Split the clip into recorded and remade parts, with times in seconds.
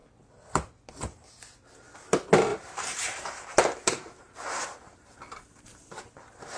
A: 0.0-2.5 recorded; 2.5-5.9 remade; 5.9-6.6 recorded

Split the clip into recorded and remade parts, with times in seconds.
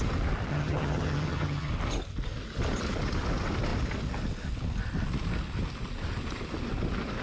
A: 0.0-0.5 recorded; 0.5-1.7 remade; 1.7-7.2 recorded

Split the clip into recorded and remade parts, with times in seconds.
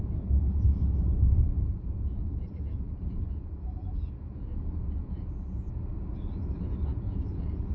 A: 0.0-1.7 recorded; 1.7-5.7 remade; 5.7-6.9 recorded; 6.9-7.7 remade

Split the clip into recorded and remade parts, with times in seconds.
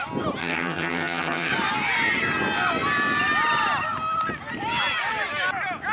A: 0.0-0.4 recorded; 0.4-1.5 remade; 1.5-5.9 recorded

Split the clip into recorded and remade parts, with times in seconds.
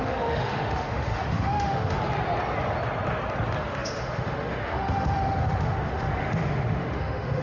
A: 0.0-2.0 remade; 2.0-3.6 recorded; 3.6-7.4 remade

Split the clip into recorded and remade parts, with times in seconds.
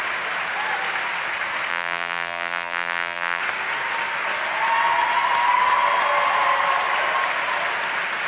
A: 0.0-1.7 recorded; 1.7-3.4 remade; 3.4-8.3 recorded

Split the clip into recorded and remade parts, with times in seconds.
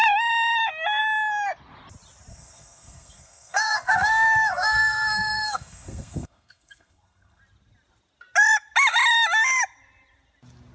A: 0.0-2.3 recorded; 2.3-7.4 remade; 7.4-10.7 recorded